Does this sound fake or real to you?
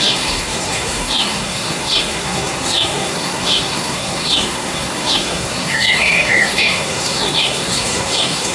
fake